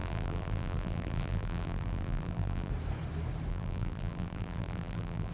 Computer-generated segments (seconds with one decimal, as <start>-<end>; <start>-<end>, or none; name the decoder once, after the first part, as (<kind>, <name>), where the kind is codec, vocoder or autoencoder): 0.0-2.7 (vocoder, BigVGAN v2); 3.5-5.3